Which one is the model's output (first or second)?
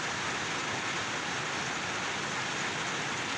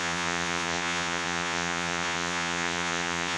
second